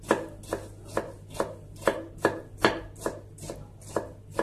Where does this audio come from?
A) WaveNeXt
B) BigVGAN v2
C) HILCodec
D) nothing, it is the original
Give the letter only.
D